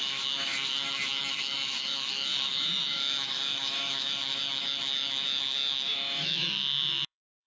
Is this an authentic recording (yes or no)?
no